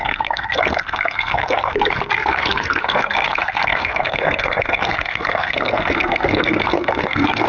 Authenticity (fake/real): fake